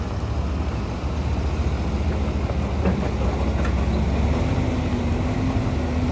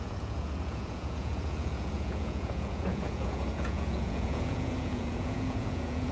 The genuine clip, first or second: first